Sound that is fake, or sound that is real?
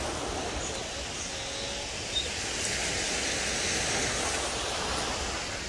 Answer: real